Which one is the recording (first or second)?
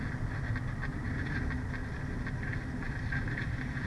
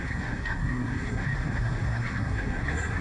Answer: first